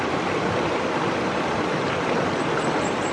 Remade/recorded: recorded